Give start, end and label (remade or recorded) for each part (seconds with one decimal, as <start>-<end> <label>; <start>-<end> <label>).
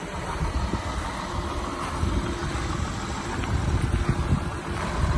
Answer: 0.0-5.2 recorded